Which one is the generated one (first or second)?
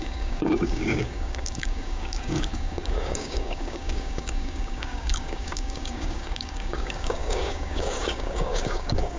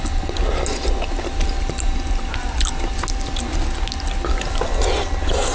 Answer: first